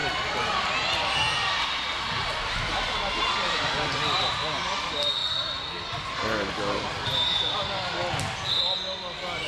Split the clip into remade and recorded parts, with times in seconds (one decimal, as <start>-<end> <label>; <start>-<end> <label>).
0.0-9.5 recorded

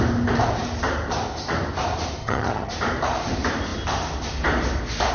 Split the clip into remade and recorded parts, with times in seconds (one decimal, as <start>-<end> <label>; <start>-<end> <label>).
0.0-2.2 recorded; 2.2-2.7 remade; 2.7-5.1 recorded

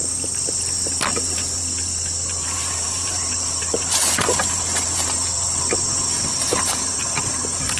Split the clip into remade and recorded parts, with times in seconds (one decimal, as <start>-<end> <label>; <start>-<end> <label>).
0.0-1.1 recorded; 1.1-7.8 remade

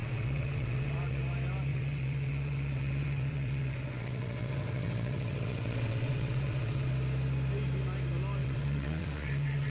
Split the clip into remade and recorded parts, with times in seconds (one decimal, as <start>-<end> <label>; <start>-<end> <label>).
0.0-1.2 remade; 1.2-1.7 recorded; 1.7-6.9 remade; 6.9-8.4 recorded; 8.4-9.7 remade

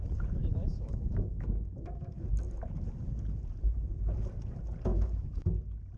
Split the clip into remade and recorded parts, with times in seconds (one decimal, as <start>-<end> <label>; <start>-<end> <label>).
0.0-0.4 recorded; 0.4-2.1 remade; 2.1-4.9 recorded; 4.9-5.6 remade; 5.6-6.0 recorded

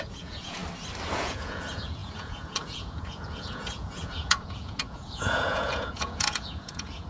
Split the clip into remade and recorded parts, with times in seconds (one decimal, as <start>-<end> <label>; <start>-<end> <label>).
0.0-0.6 remade; 0.6-1.1 recorded; 1.1-7.1 remade